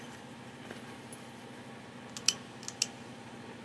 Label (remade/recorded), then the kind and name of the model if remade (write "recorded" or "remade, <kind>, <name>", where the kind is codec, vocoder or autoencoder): recorded